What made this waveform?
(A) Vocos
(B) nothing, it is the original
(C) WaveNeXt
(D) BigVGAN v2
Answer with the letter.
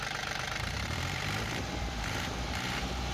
D